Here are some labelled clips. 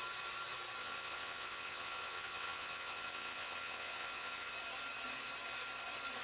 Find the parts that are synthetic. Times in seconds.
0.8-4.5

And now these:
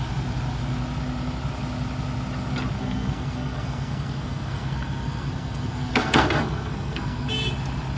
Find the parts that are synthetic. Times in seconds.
2.8-7.3

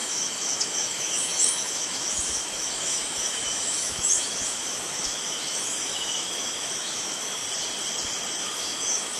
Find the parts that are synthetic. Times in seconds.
0.0-7.4; 8.4-9.2